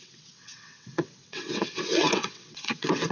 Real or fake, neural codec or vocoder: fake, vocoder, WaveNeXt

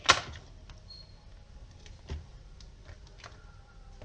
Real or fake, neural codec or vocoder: real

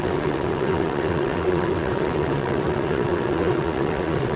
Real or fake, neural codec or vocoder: fake, vocoder, WaveNeXt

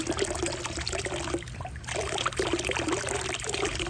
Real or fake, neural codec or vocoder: real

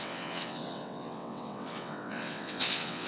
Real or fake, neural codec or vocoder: fake, vocoder, WaveNeXt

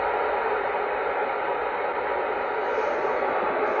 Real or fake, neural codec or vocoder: real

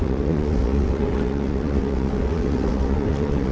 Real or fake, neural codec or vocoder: fake, vocoder, WaveNeXt